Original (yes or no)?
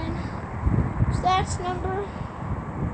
yes